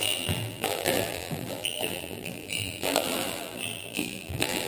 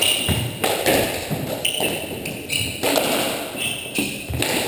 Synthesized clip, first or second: first